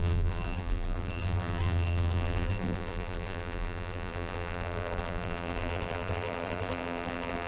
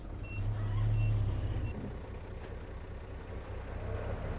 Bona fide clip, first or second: second